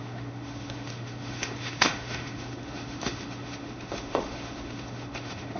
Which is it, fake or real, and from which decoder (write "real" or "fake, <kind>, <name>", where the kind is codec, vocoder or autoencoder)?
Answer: fake, autoencoder, DAC-VAE